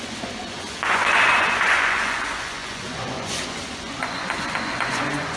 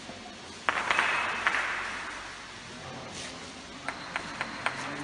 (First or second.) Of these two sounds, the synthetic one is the first